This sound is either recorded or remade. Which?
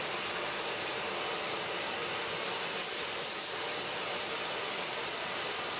recorded